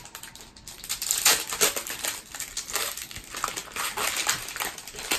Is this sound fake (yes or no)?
no